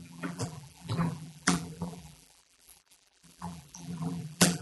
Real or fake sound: fake